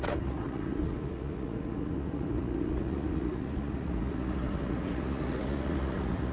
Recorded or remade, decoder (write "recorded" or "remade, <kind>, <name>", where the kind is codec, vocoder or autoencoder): remade, vocoder, Vocos